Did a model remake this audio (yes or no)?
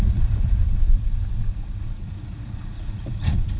yes